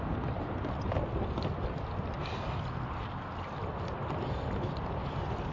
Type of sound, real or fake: real